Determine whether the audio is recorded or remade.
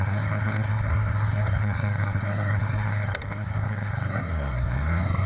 remade